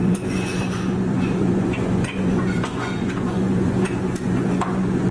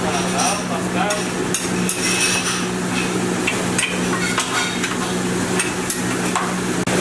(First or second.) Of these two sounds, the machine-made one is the first